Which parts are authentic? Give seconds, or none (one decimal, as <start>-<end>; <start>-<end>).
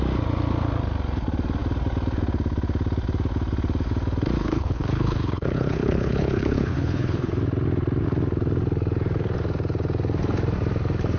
0.0-4.4; 7.3-11.2